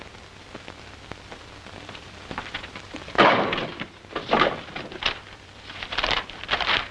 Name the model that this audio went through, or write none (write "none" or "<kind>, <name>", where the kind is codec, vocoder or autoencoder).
vocoder, BigVGAN v2